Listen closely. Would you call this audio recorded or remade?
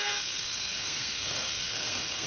remade